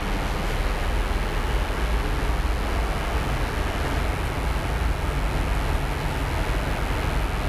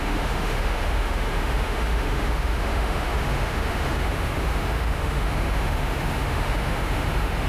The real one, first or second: first